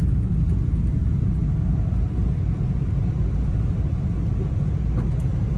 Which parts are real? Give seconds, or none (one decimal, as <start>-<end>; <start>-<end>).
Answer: 0.0-5.6